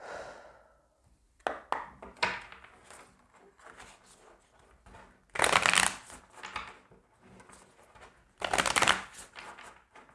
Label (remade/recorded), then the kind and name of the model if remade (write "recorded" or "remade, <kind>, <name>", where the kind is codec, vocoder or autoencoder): recorded